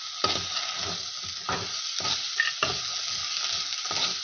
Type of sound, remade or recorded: recorded